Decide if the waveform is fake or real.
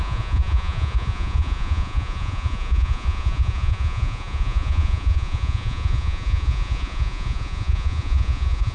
fake